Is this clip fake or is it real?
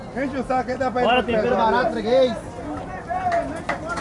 real